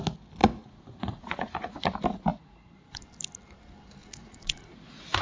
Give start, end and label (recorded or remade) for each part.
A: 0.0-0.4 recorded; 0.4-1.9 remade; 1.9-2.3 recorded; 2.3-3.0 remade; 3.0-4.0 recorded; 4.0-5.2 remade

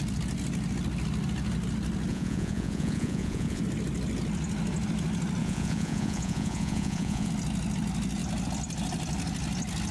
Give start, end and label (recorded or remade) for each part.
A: 0.0-2.1 recorded; 2.1-3.6 remade; 3.6-5.4 recorded; 5.4-7.3 remade; 7.3-9.9 recorded

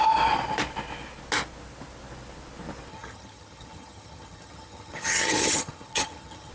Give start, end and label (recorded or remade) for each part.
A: 0.0-2.9 recorded; 2.9-6.5 remade

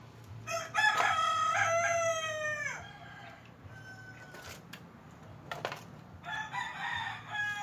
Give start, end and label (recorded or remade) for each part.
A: 0.0-7.6 recorded